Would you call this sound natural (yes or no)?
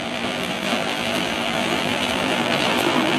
no